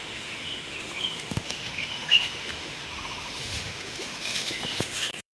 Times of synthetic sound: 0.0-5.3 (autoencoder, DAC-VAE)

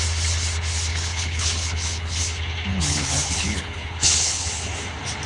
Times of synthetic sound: 0.9-2.2 (codec, HILCodec); 2.7-4.7

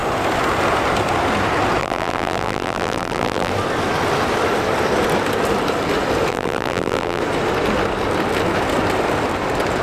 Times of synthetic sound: 1.8-3.5 (vocoder, BigVGAN v2); 6.3-7.2

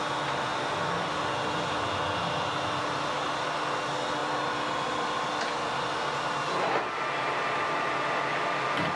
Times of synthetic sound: none